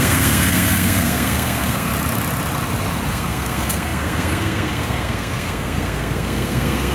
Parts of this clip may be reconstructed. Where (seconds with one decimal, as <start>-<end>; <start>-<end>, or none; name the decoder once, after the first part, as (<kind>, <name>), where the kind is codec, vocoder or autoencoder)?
0.0-1.9 (codec, SNAC); 3.1-6.9